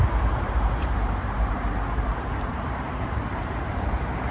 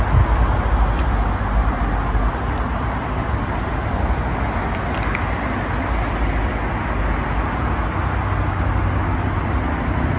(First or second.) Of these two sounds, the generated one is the first